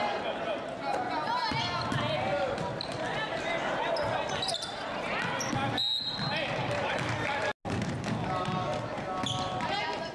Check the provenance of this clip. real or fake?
real